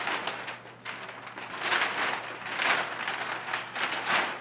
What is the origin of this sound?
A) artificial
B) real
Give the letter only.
B